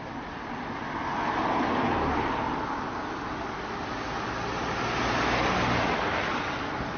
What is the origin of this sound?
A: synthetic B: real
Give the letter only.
B